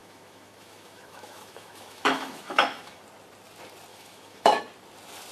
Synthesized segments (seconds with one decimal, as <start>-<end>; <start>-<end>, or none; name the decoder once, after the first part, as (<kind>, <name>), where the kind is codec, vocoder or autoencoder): 0.0-3.0 (autoencoder, DAC-VAE); 3.9-4.6